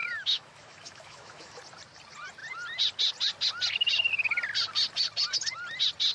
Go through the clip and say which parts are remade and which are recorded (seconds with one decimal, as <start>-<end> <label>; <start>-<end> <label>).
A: 0.0-1.6 remade; 1.6-6.1 recorded